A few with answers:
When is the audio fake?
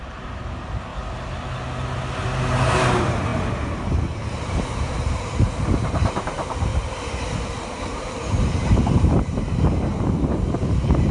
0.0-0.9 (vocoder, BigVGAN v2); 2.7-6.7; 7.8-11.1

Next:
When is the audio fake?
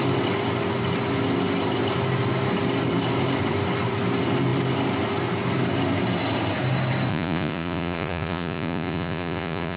7.1-9.8 (vocoder, Vocos)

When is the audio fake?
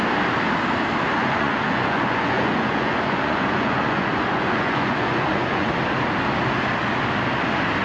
1.2-5.7 (vocoder, Vocos)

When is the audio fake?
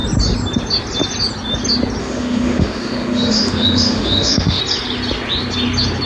2.0-4.6 (autoencoder, DAC-VAE)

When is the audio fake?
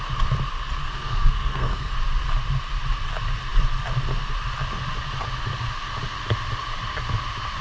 0.8-1.9 (codec, SNAC)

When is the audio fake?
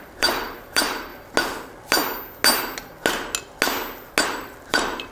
0.0-1.1 (vocoder, BigVGAN v2); 4.2-5.1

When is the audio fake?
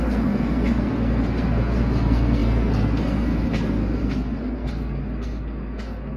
0.0-6.2 (codec, SNAC)